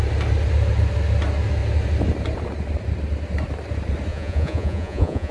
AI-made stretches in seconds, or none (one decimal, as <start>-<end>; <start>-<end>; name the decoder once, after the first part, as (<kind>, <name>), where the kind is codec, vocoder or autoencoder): 4.1-5.3 (vocoder, Vocos)